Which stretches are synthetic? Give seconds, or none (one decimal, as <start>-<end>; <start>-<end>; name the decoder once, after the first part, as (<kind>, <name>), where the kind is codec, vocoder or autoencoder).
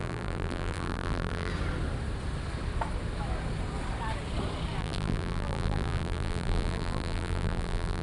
0.0-1.5 (vocoder, BigVGAN v2); 4.8-8.0